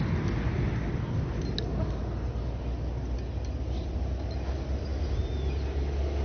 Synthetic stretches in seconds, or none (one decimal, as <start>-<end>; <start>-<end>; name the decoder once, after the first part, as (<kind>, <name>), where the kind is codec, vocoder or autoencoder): none